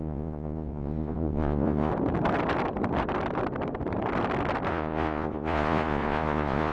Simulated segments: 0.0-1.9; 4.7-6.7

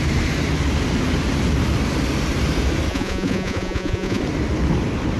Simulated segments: 2.9-4.2

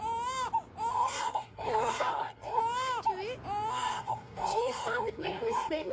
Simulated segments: 0.9-2.6; 3.7-5.9

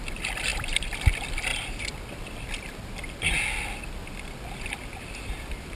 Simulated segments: 0.0-1.5; 5.0-5.8

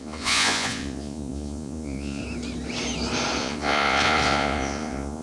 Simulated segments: 0.0-2.2; 3.4-5.2

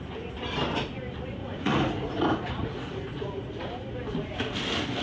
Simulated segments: 1.4-3.5

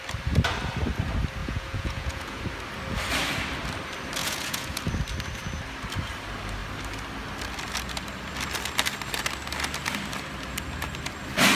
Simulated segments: 1.4-2.4; 4.2-4.8